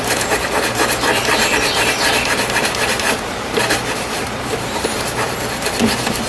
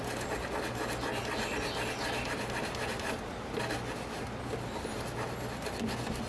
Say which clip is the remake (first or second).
first